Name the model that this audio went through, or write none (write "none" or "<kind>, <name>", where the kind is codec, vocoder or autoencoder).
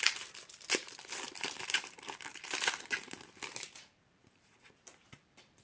vocoder, BigVGAN v2